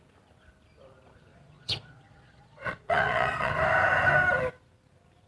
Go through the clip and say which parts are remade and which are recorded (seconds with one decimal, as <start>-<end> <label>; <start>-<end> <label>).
0.0-1.3 recorded; 1.3-3.5 remade; 3.5-5.3 recorded